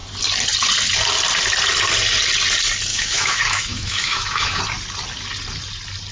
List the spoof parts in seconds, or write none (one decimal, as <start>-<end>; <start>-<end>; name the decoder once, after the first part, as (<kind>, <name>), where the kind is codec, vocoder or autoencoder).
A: 2.9-4.6 (autoencoder, DAC-VAE)